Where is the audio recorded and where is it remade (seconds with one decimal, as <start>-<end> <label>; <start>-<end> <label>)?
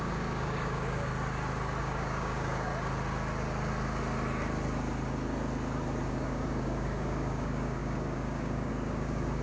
0.0-1.1 remade; 1.1-1.8 recorded; 1.8-2.7 remade; 2.7-6.1 recorded; 6.1-9.4 remade